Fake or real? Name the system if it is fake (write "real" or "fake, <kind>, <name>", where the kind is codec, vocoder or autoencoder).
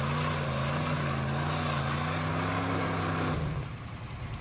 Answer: real